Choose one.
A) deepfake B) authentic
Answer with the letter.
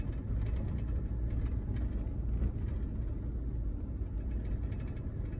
B